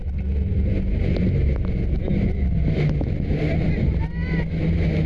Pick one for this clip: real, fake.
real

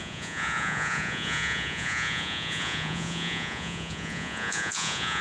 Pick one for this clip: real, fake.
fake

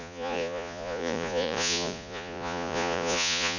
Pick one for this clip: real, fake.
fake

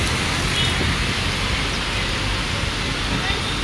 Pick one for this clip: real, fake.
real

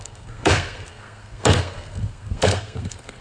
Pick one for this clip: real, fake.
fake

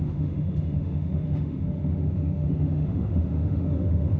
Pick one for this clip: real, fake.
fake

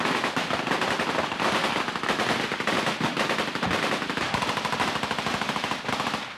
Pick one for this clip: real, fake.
real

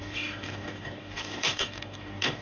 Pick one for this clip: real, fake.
fake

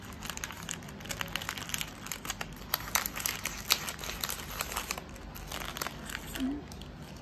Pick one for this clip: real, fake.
real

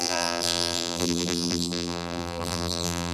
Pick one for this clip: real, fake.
fake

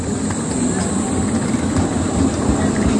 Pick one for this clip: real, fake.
real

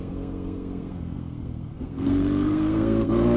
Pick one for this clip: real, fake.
fake